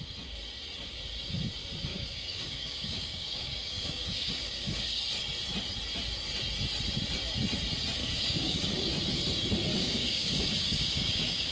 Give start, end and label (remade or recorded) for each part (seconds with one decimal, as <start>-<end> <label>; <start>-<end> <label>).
0.0-1.9 recorded; 1.9-5.0 remade; 5.0-8.0 recorded; 8.0-8.7 remade; 8.7-9.8 recorded; 9.8-11.5 remade

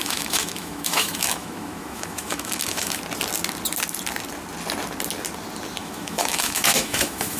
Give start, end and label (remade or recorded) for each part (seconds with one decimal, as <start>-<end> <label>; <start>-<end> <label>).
0.0-3.0 remade; 3.0-5.8 recorded; 5.8-7.4 remade

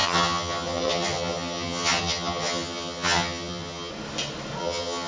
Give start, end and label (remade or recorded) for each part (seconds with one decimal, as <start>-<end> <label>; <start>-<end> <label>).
0.0-3.9 remade; 3.9-4.6 recorded; 4.6-5.1 remade

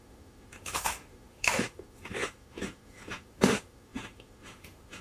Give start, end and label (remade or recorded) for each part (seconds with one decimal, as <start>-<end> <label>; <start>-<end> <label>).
0.0-5.0 remade

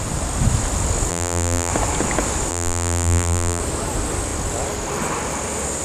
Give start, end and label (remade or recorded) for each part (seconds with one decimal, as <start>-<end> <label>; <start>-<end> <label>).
0.0-1.1 recorded; 1.1-1.7 remade; 1.7-2.5 recorded; 2.5-3.6 remade; 3.6-5.8 recorded

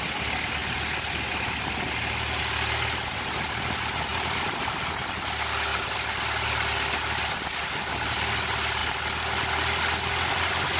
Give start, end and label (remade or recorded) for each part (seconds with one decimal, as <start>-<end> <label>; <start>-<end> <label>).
0.0-4.1 recorded; 4.1-4.6 remade; 4.6-10.8 recorded

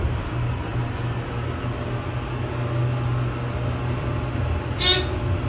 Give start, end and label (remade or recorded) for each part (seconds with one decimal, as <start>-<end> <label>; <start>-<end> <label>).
0.0-0.7 remade; 0.7-4.0 recorded; 4.0-5.5 remade

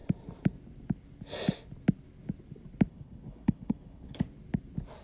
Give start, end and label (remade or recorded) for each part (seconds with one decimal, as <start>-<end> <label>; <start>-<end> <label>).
0.0-2.9 recorded; 2.9-4.2 remade; 4.2-5.0 recorded